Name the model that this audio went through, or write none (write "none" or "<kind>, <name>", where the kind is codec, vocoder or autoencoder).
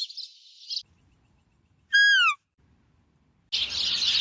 none